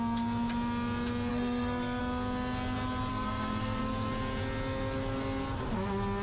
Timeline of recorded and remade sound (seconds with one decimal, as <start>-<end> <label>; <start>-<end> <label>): 0.0-1.3 recorded; 1.3-2.0 remade; 2.0-3.1 recorded; 3.1-3.8 remade; 3.8-6.2 recorded